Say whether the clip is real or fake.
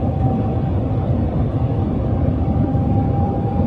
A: fake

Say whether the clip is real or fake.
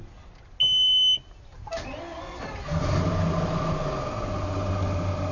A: real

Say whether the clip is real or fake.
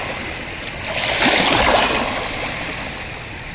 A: real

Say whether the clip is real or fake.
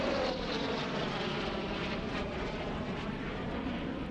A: real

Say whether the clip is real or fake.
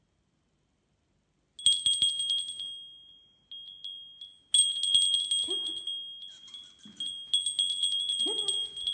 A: real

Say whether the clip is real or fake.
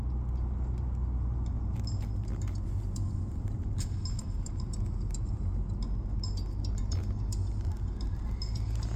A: real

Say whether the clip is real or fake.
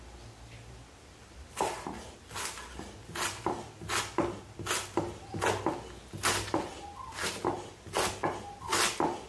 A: real